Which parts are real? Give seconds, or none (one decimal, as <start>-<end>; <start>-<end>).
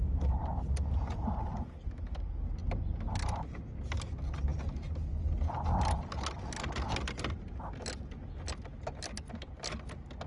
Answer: 0.0-10.3